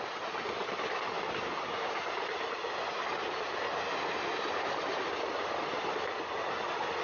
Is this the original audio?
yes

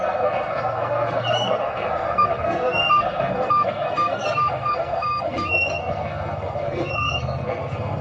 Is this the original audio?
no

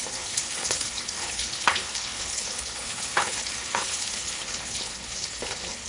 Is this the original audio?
no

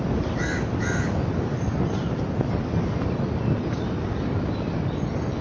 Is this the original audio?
yes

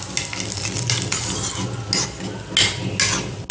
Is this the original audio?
yes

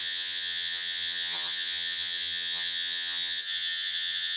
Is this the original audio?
no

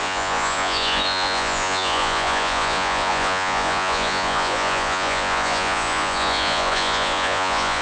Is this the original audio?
no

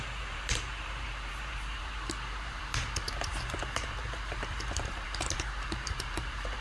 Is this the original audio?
no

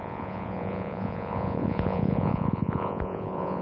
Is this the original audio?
no